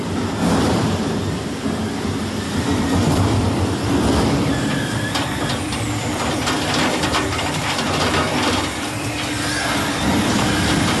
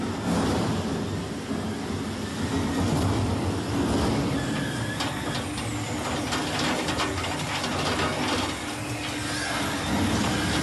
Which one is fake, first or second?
first